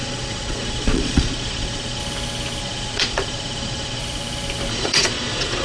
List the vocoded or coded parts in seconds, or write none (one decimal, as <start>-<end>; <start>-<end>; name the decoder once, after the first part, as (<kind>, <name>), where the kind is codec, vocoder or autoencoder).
0.0-2.0 (vocoder, Vocos); 2.6-4.0; 4.7-5.6